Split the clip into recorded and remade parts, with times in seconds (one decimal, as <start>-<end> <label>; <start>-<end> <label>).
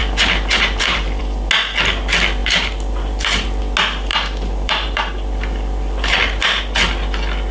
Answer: 0.0-1.2 remade; 1.2-2.4 recorded; 2.4-3.6 remade; 3.6-4.1 recorded; 4.1-6.6 remade; 6.6-7.5 recorded